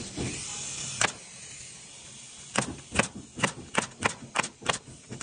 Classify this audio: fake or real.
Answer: real